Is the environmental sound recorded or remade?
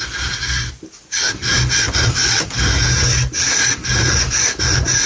recorded